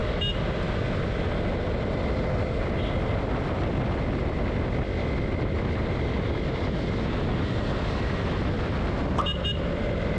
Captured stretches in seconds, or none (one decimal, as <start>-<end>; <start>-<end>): 0.0-10.2